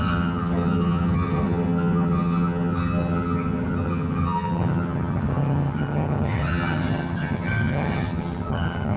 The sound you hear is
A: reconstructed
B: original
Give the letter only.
A